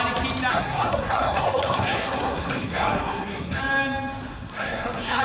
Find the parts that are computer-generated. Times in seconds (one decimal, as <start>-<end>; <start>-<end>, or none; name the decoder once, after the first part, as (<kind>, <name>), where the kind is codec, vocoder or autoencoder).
0.5-3.6 (codec, SNAC); 4.3-5.2